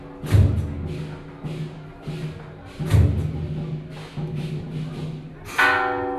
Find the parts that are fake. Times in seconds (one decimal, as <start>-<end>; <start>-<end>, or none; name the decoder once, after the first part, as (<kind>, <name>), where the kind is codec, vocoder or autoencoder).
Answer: 4.0-4.5 (autoencoder, DAC-VAE)